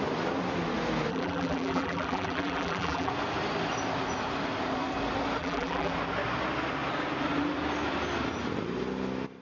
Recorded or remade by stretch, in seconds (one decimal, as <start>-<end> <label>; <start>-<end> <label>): 0.0-1.1 recorded; 1.1-3.1 remade; 3.1-5.4 recorded; 5.4-5.9 remade; 5.9-9.4 recorded